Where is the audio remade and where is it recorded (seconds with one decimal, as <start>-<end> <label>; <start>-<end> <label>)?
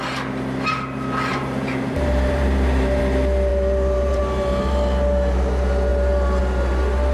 0.0-1.3 recorded; 1.3-3.0 remade; 3.0-3.5 recorded; 3.5-4.2 remade; 4.2-7.1 recorded